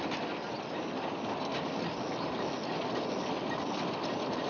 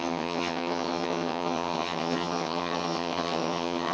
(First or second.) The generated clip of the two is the second